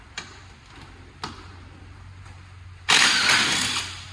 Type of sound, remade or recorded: recorded